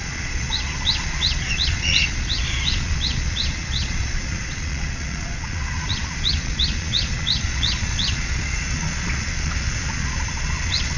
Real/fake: fake